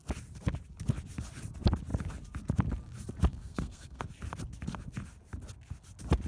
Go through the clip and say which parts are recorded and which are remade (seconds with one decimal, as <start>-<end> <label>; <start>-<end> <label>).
0.0-3.3 recorded; 3.3-4.0 remade; 4.0-6.3 recorded